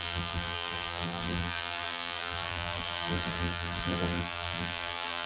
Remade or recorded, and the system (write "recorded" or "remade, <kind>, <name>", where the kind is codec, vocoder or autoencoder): remade, vocoder, BigVGAN v2